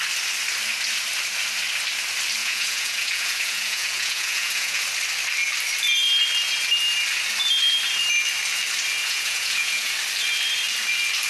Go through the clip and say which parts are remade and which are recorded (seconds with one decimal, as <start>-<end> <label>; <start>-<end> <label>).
0.0-2.4 recorded; 2.4-4.8 remade; 4.8-9.0 recorded; 9.0-9.9 remade; 9.9-11.3 recorded